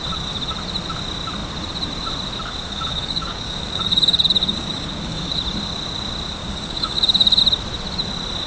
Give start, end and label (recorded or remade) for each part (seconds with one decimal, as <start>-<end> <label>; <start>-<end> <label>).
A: 0.0-2.6 recorded; 2.6-5.4 remade; 5.4-6.4 recorded; 6.4-7.4 remade; 7.4-8.5 recorded